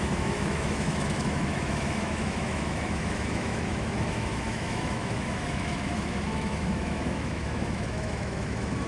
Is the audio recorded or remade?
remade